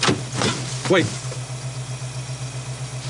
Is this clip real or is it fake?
real